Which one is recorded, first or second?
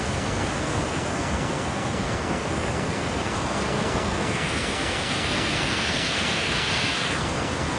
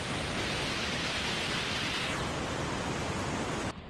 second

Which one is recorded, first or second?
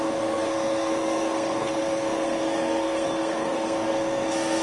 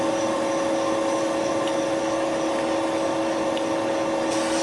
second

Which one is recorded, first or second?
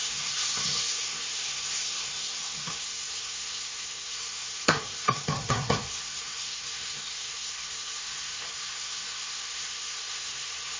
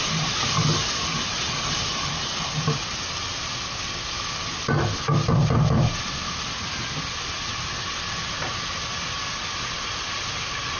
second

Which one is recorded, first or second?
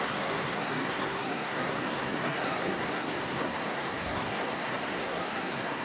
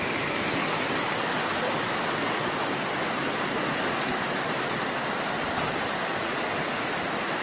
second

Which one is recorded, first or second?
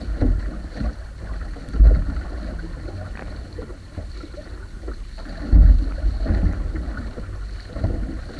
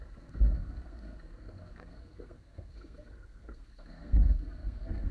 first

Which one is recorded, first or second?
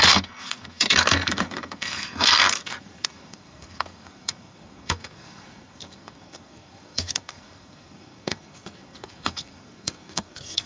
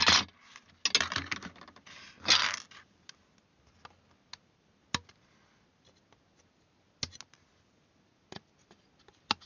second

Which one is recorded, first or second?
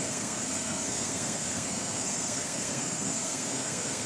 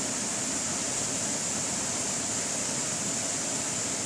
second